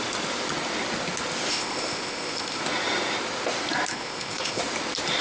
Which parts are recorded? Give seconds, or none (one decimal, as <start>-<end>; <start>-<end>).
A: 0.0-1.5; 2.6-3.9; 4.6-5.2